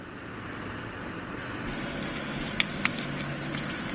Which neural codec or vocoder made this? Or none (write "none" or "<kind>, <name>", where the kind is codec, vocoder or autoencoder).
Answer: none